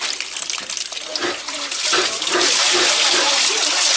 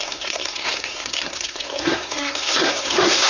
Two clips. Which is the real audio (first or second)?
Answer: first